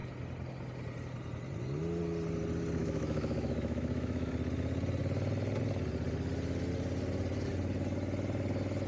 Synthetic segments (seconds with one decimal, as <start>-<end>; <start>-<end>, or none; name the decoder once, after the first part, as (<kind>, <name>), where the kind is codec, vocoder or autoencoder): 2.8-4.3 (autoencoder, DAC-VAE)